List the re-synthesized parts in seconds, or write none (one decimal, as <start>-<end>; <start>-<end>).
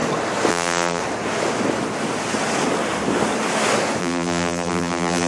0.5-1.0; 4.0-5.3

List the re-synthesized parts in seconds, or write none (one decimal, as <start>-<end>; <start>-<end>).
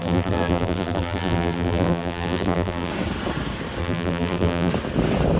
0.0-2.9; 3.8-4.7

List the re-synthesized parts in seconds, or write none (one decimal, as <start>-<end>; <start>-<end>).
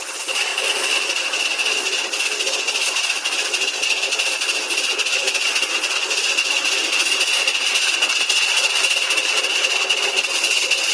0.5-1.2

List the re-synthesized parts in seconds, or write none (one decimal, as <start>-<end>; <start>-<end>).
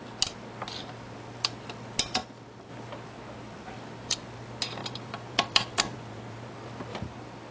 2.2-2.7; 4.8-6.5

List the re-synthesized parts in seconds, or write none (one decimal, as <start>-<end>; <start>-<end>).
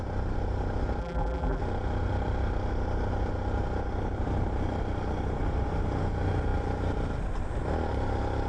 1.0-1.6